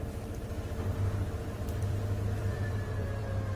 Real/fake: fake